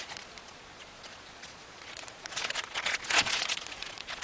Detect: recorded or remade remade